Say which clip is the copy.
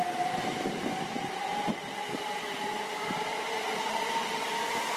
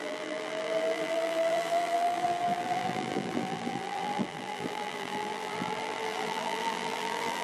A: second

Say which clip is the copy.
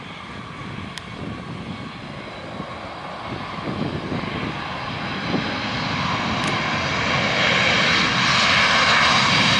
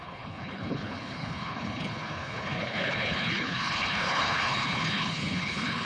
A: second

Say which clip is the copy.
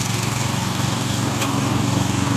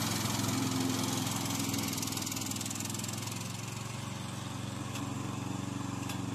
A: first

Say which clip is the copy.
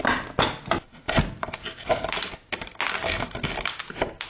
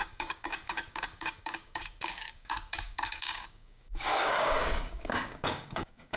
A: second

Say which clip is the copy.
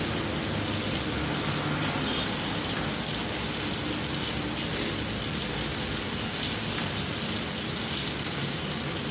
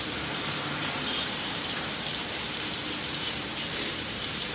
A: second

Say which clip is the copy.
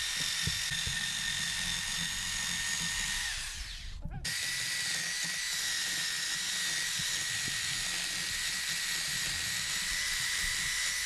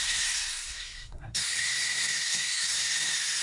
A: second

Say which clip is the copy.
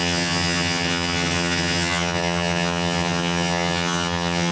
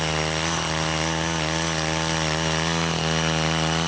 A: first